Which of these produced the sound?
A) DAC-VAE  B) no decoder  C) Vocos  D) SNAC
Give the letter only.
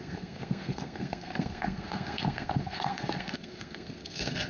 D